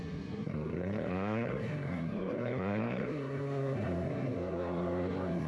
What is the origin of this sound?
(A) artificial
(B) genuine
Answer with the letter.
A